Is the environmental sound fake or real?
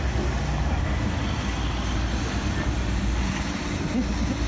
real